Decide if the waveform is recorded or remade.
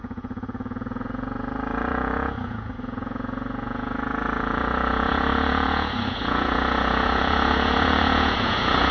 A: remade